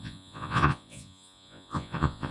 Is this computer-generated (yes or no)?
yes